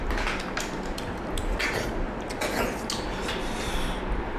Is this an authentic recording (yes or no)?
yes